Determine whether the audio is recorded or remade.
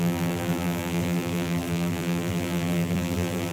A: remade